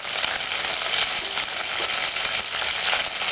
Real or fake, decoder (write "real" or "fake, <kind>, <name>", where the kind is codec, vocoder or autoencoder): real